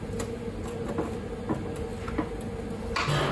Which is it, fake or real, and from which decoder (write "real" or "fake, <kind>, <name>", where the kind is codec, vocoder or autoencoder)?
real